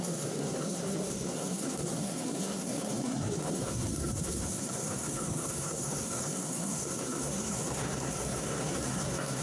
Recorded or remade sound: remade